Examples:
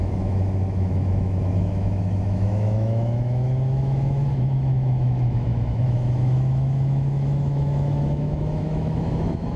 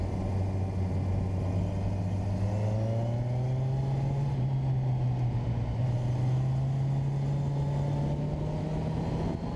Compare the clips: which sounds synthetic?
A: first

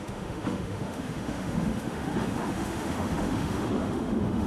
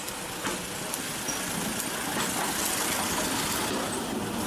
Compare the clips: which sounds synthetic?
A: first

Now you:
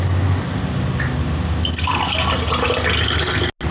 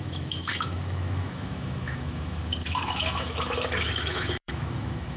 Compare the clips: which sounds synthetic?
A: second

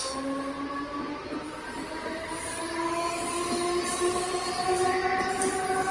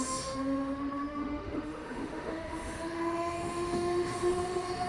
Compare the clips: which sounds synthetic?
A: second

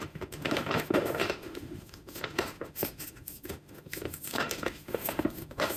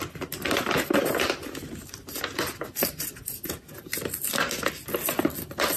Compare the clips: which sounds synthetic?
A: first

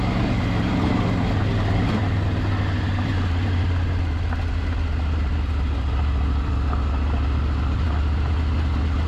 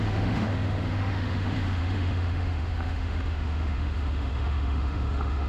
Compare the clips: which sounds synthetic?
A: second